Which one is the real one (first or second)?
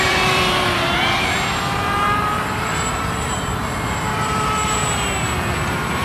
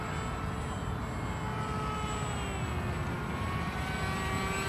second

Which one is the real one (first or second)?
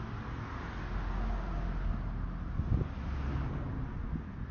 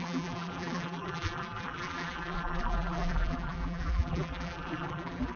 first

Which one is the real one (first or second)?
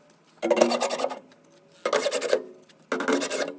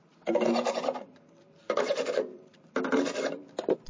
first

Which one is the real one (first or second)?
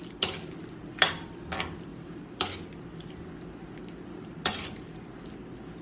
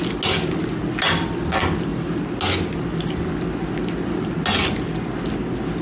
second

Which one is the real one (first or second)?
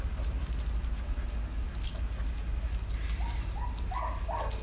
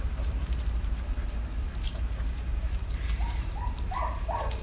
first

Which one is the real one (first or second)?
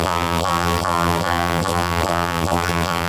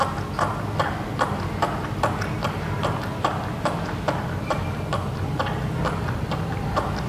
second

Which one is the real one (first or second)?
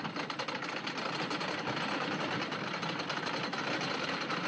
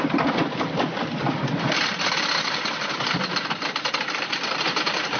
first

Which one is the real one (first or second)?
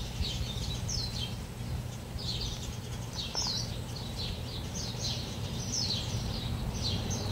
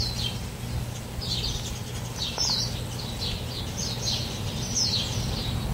second